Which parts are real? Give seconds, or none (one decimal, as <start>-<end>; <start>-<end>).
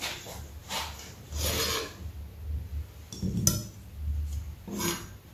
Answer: 0.0-5.3